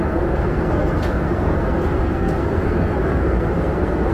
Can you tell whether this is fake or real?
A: fake